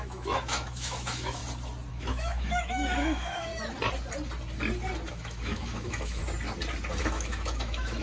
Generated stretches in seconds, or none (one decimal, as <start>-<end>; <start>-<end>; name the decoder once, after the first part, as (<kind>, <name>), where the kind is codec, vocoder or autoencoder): 0.0-1.4 (autoencoder, DAC-VAE); 1.9-3.5; 5.1-6.2; 7.0-8.0